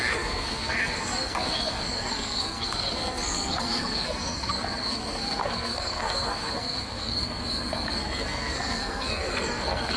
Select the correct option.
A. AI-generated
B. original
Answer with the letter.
A